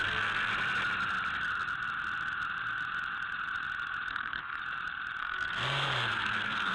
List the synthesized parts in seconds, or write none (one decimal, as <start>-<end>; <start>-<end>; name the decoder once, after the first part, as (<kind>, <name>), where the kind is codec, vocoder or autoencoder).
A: 0.0-0.5 (codec, SNAC); 4.1-4.6; 5.2-6.7